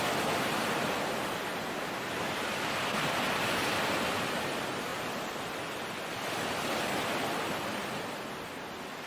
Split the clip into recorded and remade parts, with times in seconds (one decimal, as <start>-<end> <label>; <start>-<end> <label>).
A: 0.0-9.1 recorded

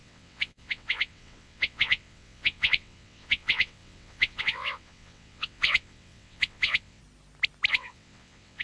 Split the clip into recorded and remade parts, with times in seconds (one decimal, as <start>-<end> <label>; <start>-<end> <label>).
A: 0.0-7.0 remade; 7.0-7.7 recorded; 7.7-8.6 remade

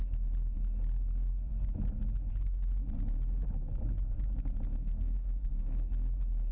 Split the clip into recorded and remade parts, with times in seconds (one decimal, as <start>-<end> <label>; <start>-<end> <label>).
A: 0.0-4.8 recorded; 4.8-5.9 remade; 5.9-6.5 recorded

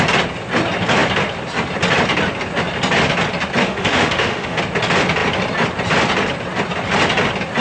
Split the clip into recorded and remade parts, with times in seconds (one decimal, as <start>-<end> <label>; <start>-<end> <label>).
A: 0.0-3.6 recorded; 3.6-4.6 remade; 4.6-7.6 recorded

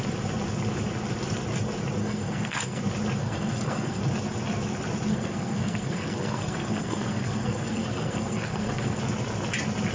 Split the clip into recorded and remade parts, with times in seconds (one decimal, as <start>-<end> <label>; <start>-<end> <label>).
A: 0.0-2.0 recorded; 2.0-2.8 remade; 2.8-3.2 recorded; 3.2-4.0 remade; 4.0-5.1 recorded; 5.1-9.0 remade; 9.0-9.9 recorded